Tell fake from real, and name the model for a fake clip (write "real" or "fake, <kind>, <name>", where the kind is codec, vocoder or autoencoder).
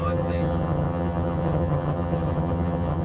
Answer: fake, vocoder, HiFi-GAN